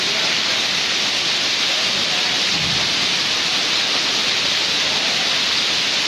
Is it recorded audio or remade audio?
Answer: recorded